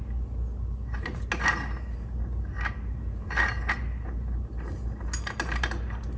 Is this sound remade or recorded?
recorded